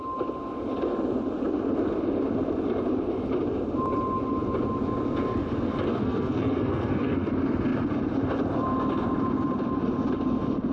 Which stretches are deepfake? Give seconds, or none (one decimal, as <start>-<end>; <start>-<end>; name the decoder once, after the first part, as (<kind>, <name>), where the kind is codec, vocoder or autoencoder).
5.9-7.3 (codec, SNAC)